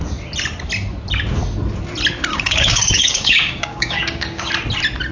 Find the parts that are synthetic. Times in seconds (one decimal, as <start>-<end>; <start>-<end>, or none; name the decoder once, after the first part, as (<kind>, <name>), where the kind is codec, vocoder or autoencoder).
2.3-4.5 (codec, DAC)